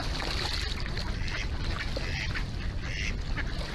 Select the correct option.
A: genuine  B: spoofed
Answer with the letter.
A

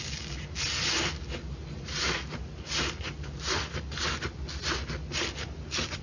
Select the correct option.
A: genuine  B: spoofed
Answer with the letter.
A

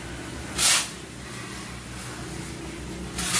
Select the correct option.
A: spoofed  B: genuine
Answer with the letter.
B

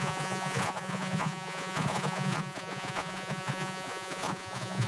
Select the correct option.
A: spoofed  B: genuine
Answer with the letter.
A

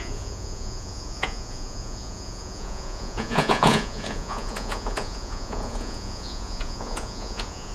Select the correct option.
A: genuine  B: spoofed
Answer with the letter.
B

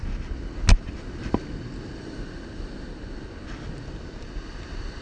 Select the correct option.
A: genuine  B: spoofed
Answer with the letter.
A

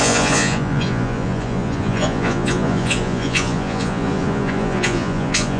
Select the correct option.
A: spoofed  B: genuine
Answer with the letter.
A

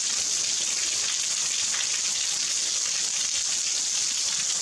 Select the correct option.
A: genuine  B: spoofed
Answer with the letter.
A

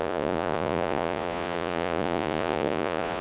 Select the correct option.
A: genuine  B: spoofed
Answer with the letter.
B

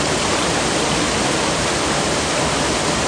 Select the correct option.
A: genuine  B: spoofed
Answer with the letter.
A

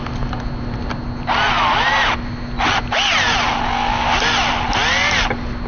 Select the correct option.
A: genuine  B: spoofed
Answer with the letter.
A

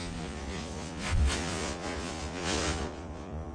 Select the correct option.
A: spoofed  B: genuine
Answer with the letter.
A